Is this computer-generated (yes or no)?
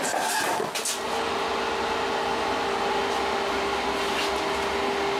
no